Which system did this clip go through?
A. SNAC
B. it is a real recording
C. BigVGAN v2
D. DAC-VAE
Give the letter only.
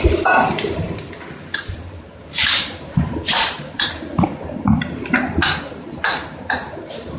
C